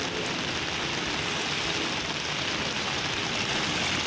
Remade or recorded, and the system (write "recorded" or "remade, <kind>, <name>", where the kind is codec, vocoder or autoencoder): recorded